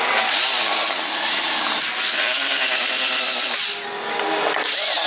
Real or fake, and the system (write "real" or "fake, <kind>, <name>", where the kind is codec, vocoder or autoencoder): real